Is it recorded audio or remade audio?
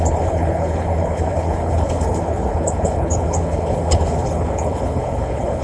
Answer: remade